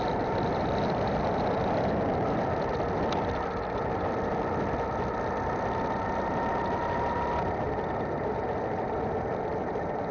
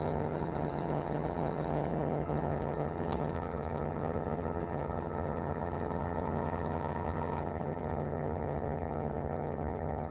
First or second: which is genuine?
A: first